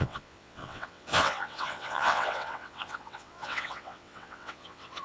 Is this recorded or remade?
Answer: remade